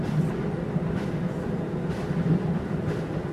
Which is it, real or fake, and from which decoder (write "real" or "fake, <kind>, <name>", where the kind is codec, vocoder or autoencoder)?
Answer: real